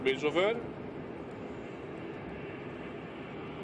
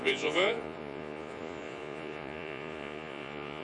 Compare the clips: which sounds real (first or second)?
first